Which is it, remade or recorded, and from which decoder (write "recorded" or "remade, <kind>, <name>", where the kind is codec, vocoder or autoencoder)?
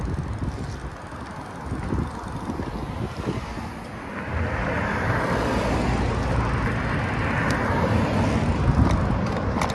recorded